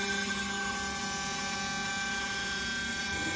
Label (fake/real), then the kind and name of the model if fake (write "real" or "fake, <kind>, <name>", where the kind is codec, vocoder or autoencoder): real